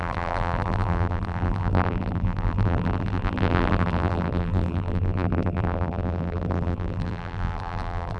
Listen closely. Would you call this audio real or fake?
fake